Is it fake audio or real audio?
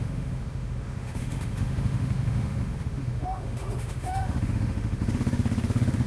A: fake